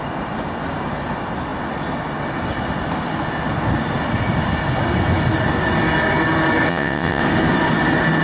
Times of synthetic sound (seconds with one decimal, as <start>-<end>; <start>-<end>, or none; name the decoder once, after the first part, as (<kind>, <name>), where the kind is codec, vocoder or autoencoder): 6.7-7.2 (vocoder, WaveNeXt)